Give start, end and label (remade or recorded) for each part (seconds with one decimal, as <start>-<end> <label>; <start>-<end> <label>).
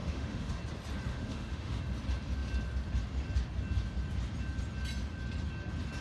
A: 0.0-0.6 remade; 0.6-1.1 recorded; 1.1-1.8 remade; 1.8-6.0 recorded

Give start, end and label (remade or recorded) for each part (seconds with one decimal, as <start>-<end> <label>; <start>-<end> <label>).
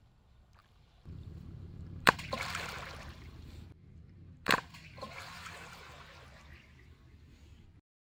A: 0.0-0.6 recorded; 0.6-5.5 remade; 5.5-8.1 recorded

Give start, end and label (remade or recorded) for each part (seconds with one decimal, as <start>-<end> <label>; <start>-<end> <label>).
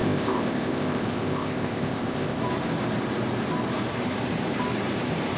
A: 0.0-2.4 remade; 2.4-5.4 recorded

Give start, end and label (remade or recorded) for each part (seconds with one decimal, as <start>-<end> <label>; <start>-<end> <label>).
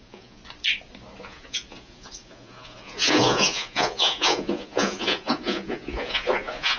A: 0.0-0.4 remade; 0.4-1.2 recorded; 1.2-6.8 remade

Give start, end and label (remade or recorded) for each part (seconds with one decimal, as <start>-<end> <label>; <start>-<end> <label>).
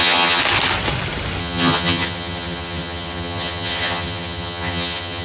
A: 0.0-0.4 remade; 0.4-1.4 recorded; 1.4-5.2 remade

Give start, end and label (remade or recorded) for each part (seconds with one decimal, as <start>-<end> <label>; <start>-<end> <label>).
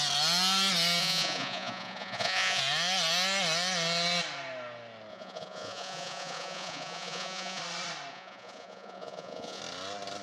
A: 0.0-1.0 recorded; 1.0-2.6 remade; 2.6-5.1 recorded; 5.1-7.6 remade; 7.6-8.1 recorded; 8.1-9.6 remade; 9.6-10.2 recorded